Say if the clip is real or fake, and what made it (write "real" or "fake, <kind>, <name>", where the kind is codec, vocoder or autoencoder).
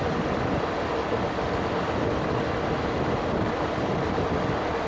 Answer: real